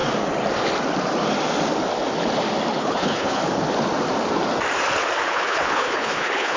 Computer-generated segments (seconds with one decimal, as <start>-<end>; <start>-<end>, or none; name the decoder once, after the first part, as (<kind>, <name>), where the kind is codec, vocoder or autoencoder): 2.8-3.4 (codec, HILCodec); 5.3-6.6